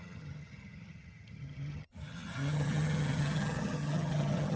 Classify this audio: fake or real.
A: fake